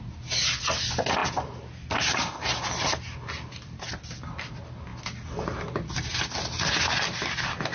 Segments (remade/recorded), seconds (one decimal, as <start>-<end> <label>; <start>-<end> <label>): 0.0-7.7 recorded